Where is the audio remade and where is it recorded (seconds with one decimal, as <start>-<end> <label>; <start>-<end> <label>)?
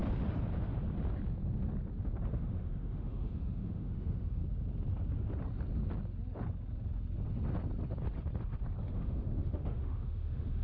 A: 0.0-2.3 recorded; 2.3-4.4 remade; 4.4-8.8 recorded; 8.8-10.6 remade